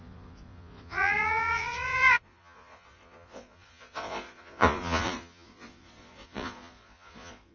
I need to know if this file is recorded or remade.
remade